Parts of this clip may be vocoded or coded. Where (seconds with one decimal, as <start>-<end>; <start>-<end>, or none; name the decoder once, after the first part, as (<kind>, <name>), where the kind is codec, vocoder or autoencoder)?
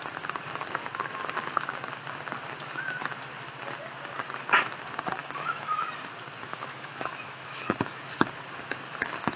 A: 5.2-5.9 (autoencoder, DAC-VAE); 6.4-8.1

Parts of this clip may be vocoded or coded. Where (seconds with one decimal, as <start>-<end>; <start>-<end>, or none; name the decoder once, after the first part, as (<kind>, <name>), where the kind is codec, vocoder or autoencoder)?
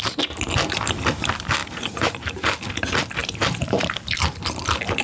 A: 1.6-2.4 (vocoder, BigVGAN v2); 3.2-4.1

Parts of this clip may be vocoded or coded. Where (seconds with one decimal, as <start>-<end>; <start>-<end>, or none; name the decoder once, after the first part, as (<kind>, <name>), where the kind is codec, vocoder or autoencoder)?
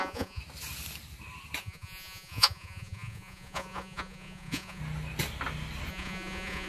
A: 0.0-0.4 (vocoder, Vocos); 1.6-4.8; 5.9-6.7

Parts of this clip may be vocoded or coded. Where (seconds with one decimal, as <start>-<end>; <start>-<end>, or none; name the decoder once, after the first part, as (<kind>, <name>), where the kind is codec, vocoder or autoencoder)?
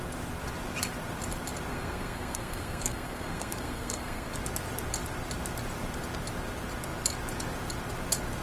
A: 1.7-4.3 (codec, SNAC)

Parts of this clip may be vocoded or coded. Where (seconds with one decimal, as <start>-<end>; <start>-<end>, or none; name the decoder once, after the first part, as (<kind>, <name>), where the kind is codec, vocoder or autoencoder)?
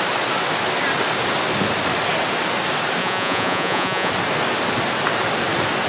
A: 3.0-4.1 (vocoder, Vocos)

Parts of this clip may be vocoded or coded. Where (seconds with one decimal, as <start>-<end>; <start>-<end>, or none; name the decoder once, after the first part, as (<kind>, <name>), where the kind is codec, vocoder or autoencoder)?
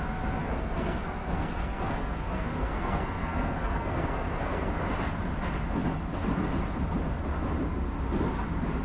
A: 0.4-4.8 (codec, SNAC)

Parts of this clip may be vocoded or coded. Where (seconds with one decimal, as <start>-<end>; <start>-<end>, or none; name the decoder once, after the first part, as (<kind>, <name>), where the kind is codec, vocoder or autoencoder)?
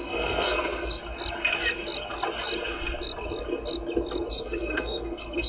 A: 0.0-1.0 (codec, SNAC); 4.3-5.5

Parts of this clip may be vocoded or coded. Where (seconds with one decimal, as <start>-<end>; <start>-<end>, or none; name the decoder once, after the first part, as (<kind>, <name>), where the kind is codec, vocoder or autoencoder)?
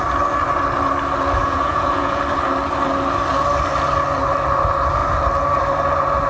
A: 1.4-2.2 (vocoder, Vocos)